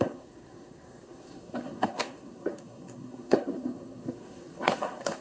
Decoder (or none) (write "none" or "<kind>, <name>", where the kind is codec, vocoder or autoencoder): codec, SNAC